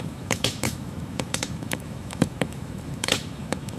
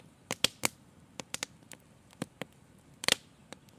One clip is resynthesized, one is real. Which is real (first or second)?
second